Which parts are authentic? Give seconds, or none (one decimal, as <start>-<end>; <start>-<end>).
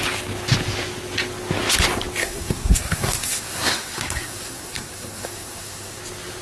0.0-2.2; 6.0-6.4